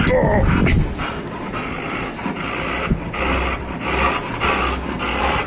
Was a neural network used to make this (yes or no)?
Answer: no